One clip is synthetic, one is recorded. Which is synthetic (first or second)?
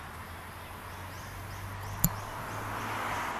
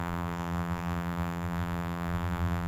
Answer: second